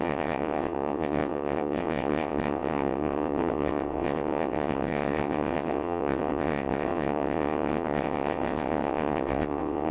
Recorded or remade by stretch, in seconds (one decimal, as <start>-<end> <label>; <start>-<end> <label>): 0.0-9.9 remade